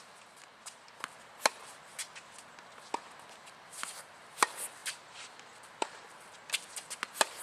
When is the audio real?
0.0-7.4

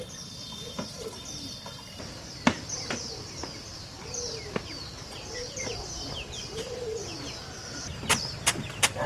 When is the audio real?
8.1-8.7